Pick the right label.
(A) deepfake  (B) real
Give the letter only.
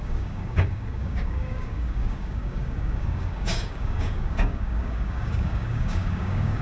A